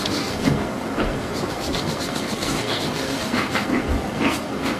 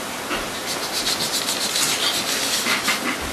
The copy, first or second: first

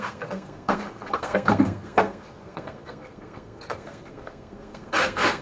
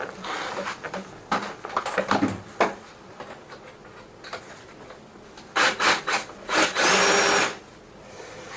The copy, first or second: first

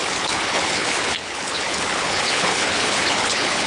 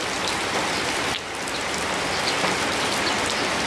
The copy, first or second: first